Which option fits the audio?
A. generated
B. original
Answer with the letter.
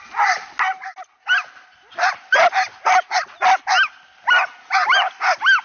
B